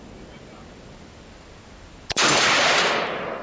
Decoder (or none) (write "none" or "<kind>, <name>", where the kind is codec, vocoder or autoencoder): none